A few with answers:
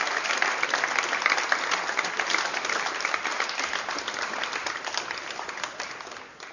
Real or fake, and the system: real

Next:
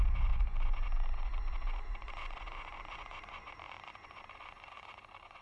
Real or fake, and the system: fake, vocoder, Vocos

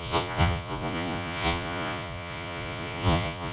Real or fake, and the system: fake, vocoder, Vocos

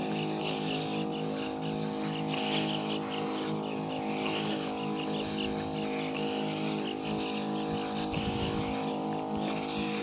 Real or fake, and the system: real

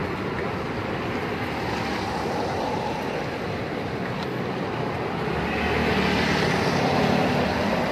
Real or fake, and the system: real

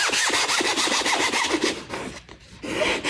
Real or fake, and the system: real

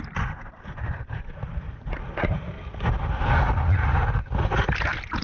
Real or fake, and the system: real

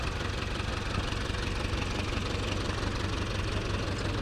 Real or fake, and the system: real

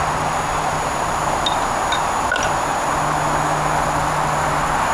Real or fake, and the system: real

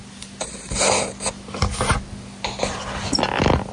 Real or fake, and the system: real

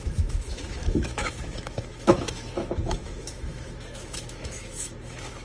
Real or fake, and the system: fake, autoencoder, DAC-VAE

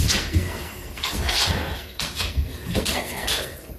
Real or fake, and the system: fake, codec, SNAC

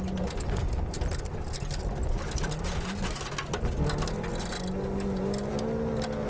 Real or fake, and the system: real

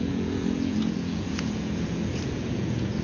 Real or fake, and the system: fake, vocoder, Vocos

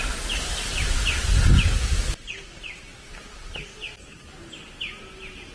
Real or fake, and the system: real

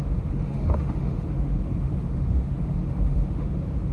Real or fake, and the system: fake, autoencoder, DAC-VAE